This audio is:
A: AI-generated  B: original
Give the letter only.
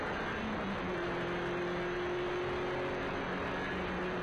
B